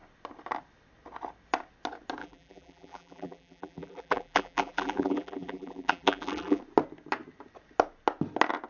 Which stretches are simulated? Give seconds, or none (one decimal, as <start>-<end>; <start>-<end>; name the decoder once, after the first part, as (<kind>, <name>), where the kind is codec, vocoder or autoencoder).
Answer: 2.2-6.6 (vocoder, BigVGAN v2)